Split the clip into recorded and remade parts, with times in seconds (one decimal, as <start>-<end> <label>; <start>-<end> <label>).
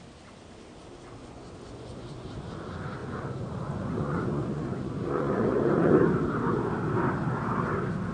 0.0-1.2 recorded; 1.2-2.5 remade; 2.5-3.0 recorded; 3.0-6.0 remade; 6.0-8.1 recorded